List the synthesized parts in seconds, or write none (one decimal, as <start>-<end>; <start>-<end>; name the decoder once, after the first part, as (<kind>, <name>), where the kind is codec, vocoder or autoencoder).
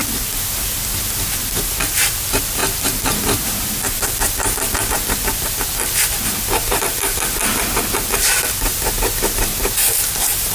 none